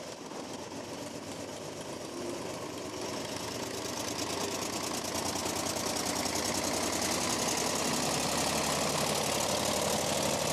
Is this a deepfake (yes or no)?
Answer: no